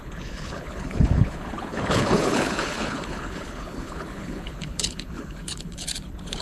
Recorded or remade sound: remade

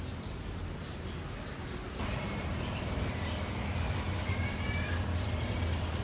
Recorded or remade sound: recorded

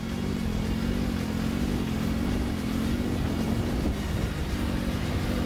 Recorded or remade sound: recorded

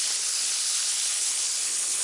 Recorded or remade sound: remade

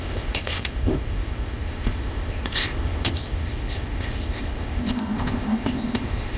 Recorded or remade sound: remade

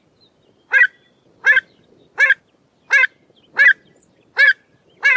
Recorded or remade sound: recorded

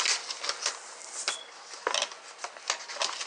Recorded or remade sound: recorded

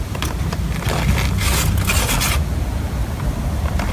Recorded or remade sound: recorded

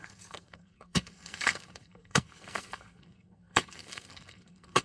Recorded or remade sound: remade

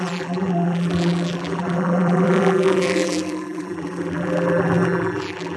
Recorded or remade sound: remade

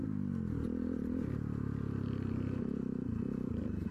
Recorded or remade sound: recorded